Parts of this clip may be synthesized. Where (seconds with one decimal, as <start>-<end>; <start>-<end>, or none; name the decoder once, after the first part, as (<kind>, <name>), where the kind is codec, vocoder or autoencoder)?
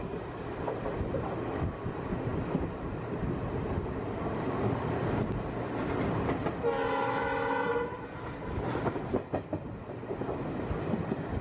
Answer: none